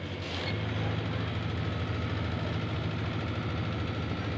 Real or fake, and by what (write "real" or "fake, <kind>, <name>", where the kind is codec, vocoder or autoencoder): real